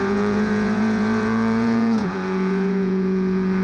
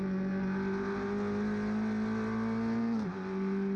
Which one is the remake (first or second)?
first